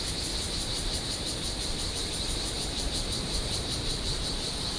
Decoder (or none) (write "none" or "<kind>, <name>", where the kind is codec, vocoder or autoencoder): vocoder, BigVGAN v2